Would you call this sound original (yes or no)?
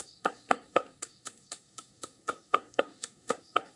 no